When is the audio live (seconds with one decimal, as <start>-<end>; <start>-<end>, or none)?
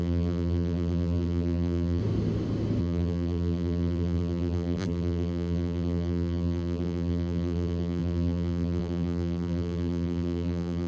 2.0-2.8